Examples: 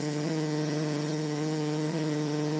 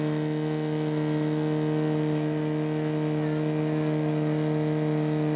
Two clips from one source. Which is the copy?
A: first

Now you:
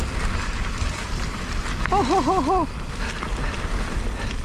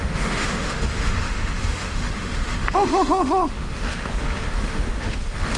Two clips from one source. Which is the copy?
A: second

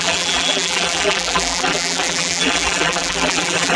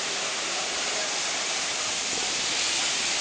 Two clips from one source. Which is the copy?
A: first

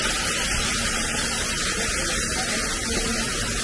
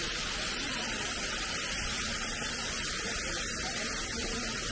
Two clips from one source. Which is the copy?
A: second